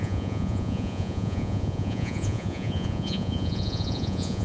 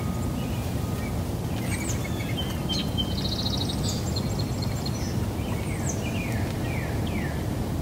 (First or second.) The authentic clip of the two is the second